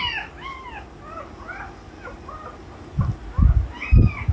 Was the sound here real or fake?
real